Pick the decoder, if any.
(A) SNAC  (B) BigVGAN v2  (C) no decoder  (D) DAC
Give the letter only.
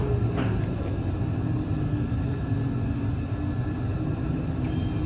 C